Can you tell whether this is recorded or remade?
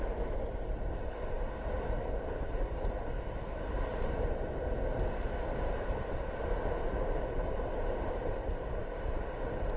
recorded